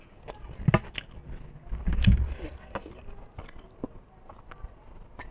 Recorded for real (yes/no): yes